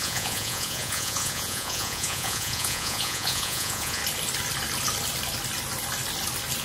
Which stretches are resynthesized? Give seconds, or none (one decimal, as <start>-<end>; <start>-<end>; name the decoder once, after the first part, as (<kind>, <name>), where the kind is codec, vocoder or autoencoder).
0.0-4.0 (vocoder, Vocos)